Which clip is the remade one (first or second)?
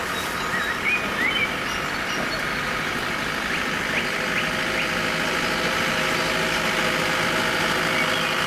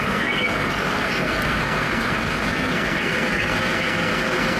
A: second